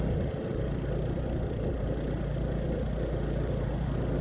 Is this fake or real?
real